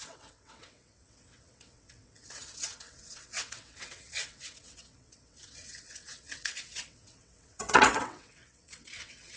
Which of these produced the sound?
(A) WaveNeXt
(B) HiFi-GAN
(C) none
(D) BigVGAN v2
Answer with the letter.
A